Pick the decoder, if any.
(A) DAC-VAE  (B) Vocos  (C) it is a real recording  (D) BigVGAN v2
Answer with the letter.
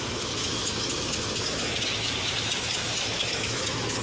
A